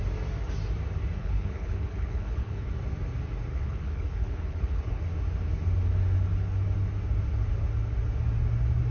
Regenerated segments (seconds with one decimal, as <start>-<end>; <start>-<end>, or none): 1.2-2.7; 3.5-5.0